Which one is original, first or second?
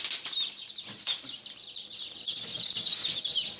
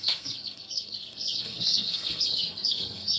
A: first